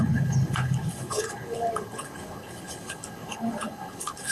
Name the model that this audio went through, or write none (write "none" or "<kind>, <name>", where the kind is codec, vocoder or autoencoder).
codec, HILCodec